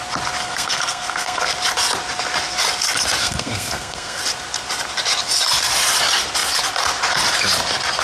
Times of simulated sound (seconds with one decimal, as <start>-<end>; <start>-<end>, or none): 0.4-1.4; 3.2-4.2